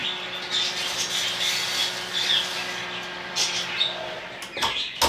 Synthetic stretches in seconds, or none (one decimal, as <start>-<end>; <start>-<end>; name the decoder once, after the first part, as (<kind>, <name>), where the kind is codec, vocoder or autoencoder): none